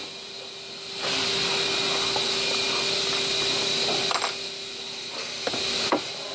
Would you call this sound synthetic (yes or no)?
no